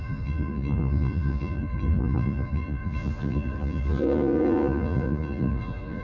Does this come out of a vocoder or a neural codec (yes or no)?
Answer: yes